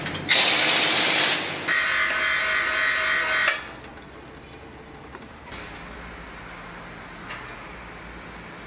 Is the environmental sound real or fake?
real